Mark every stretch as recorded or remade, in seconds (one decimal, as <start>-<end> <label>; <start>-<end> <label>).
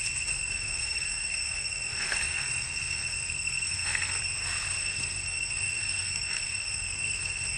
0.0-4.2 remade; 4.2-4.8 recorded; 4.8-7.6 remade